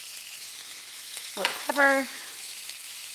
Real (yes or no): no